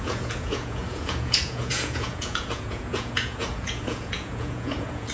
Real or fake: fake